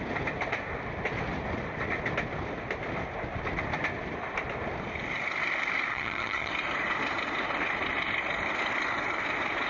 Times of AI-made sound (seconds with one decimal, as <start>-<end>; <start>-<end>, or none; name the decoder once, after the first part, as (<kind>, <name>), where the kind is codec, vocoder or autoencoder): 5.9-6.5 (vocoder, HiFi-GAN)